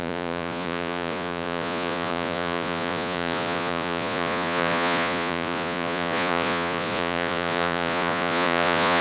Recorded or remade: remade